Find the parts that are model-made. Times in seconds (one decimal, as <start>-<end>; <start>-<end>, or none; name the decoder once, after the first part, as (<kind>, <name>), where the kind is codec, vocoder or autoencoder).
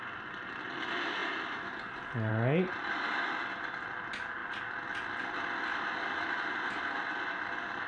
none